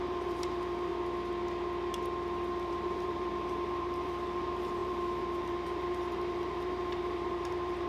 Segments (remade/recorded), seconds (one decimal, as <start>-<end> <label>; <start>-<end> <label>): 0.0-0.9 remade; 0.9-2.7 recorded; 2.7-7.9 remade